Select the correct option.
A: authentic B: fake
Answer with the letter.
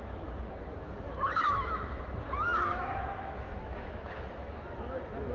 B